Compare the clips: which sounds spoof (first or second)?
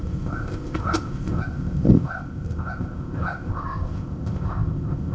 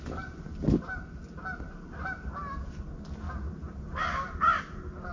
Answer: first